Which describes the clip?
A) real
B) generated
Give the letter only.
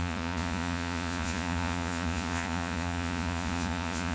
B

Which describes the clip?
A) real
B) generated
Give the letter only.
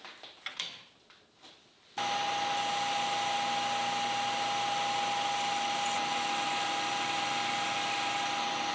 A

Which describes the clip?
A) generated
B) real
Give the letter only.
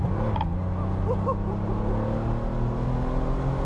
B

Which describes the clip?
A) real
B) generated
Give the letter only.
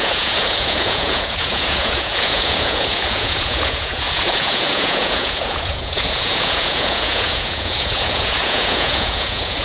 B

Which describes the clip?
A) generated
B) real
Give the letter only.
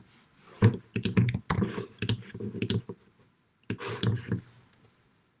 B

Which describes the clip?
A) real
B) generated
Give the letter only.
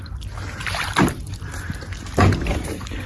A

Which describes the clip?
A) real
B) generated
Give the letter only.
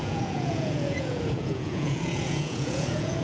B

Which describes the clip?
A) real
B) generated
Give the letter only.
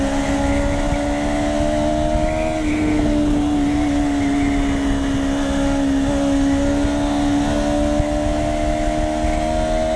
A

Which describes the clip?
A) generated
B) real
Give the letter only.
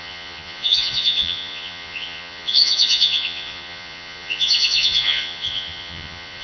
A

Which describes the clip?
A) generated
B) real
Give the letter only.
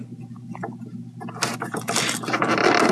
B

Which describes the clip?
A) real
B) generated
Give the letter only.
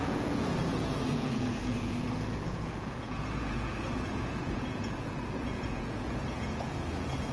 B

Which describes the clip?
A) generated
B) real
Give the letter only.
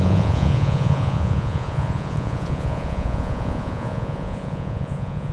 A